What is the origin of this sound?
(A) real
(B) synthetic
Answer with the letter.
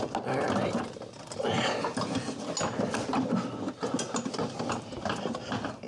A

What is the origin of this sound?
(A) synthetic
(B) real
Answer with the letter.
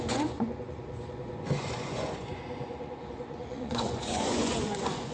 A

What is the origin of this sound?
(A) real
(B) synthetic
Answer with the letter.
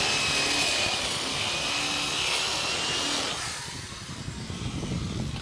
A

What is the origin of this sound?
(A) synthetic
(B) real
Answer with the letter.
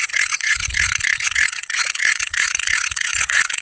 A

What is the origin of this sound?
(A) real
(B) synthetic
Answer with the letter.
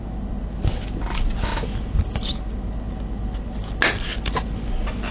A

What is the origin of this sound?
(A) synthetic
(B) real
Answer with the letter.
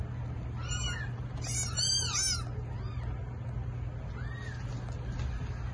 B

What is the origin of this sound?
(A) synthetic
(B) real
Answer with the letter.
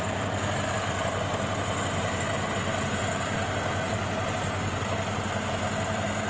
B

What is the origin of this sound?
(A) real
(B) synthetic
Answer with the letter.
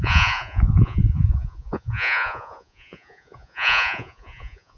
B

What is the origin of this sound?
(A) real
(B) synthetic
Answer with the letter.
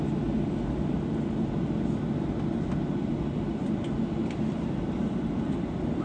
A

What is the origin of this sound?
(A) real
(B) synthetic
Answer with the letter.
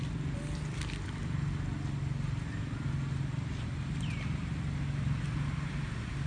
A